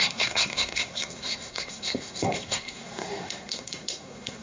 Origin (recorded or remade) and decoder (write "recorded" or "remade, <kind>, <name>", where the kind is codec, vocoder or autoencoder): remade, codec, SNAC